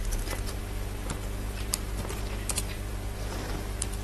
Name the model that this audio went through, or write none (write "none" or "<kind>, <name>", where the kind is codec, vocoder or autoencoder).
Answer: vocoder, BigVGAN v2